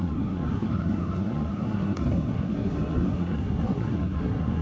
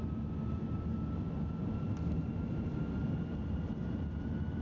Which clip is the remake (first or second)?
first